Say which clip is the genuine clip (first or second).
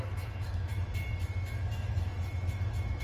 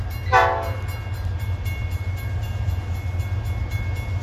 second